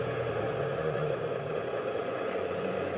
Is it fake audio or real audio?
fake